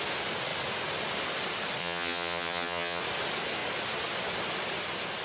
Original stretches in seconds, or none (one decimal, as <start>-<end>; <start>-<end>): 0.0-1.8; 3.0-5.2